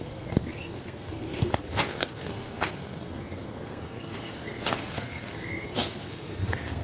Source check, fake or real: fake